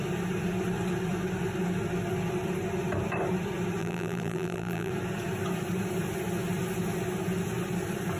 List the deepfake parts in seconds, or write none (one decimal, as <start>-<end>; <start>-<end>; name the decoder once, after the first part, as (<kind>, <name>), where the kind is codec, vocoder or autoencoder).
3.8-4.9 (vocoder, BigVGAN v2)